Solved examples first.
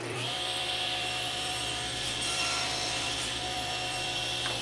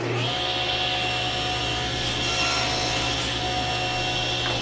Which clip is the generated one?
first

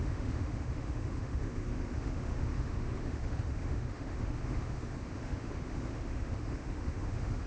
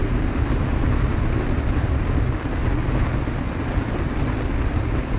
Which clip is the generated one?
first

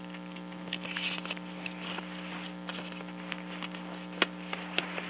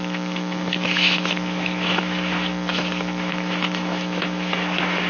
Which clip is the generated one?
second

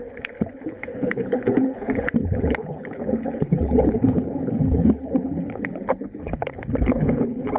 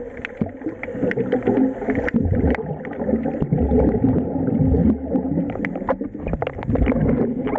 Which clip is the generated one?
first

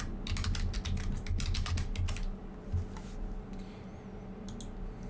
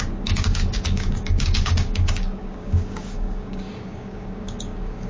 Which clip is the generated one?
second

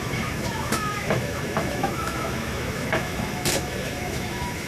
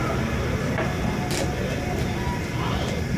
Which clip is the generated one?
first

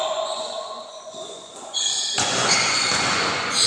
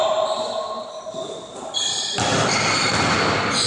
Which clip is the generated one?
first